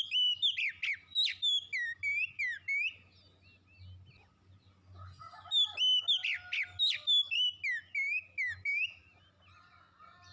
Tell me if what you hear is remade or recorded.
recorded